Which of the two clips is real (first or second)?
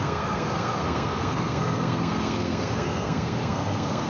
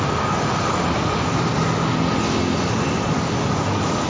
second